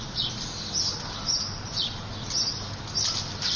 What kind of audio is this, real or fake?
real